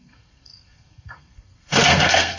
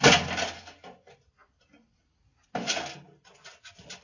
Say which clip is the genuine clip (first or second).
second